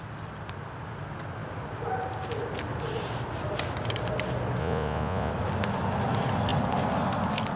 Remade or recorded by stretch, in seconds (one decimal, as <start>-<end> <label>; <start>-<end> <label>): 0.0-4.6 recorded; 4.6-5.3 remade; 5.3-7.6 recorded